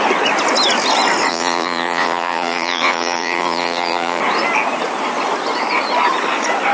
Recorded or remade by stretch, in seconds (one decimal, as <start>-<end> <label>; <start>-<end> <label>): 0.0-1.3 recorded; 1.3-4.2 remade; 4.2-6.7 recorded